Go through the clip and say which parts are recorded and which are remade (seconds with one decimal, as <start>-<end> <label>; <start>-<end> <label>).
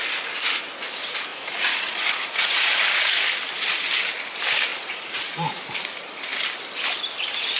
0.0-1.3 recorded; 1.3-3.3 remade; 3.3-4.7 recorded; 4.7-5.7 remade; 5.7-7.6 recorded